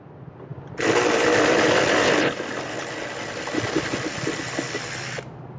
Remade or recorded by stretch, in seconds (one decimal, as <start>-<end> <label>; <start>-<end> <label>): 0.0-5.6 recorded